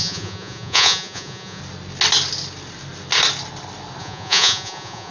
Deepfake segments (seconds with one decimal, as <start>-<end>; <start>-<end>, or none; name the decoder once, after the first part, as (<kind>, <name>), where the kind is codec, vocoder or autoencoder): 0.0-1.6 (vocoder, Vocos); 4.0-5.1

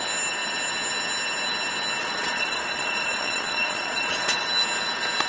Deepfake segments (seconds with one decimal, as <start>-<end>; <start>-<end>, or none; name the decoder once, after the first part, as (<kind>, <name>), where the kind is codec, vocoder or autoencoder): 2.0-4.4 (vocoder, Vocos)

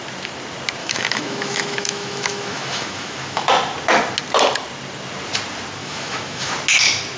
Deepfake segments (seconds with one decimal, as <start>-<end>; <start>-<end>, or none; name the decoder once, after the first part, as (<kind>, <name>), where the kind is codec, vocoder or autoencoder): 0.8-3.5 (autoencoder, DAC-VAE); 5.8-6.5

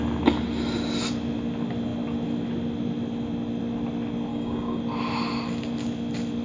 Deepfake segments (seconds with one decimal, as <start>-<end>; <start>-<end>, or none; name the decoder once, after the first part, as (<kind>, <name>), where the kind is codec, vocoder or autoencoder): 4.3-4.8 (codec, DAC)

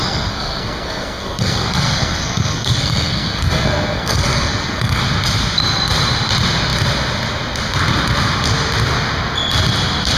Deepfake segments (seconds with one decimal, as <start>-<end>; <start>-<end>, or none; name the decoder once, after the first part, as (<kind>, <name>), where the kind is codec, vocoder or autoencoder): 0.0-5.0 (codec, SNAC)